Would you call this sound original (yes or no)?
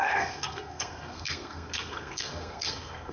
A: no